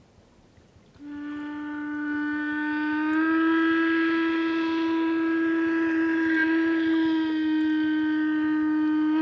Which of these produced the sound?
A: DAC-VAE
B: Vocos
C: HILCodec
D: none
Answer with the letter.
D